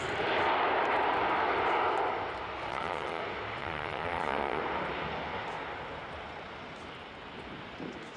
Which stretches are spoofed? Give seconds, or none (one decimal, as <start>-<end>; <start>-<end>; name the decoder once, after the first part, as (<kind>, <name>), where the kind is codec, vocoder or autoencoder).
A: 2.7-3.2 (vocoder, Vocos); 3.6-4.6